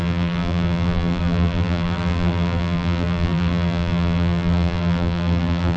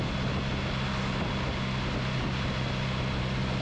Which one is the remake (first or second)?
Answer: first